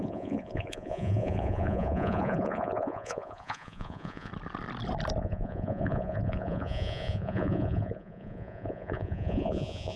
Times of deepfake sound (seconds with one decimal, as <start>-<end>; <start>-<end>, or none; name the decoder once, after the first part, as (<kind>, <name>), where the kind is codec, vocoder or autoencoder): 0.0-4.3 (vocoder, Vocos); 5.2-10.0